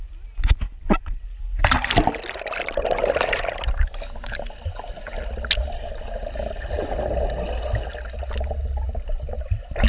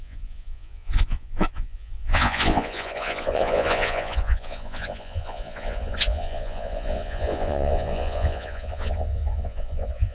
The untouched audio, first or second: first